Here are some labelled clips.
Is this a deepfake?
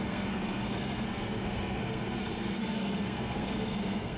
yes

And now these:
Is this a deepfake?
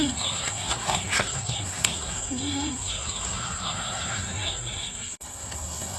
yes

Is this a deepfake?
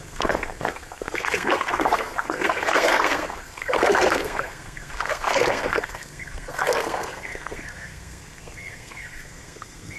yes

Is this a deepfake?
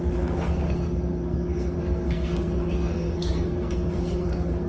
yes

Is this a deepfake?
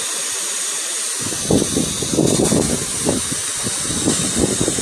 no